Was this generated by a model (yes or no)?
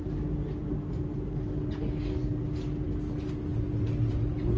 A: no